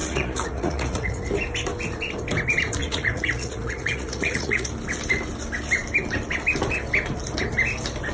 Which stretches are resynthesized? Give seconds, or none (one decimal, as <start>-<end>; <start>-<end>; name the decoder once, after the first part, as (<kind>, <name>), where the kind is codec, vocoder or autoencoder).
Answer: 0.0-1.2 (vocoder, Vocos); 2.8-4.7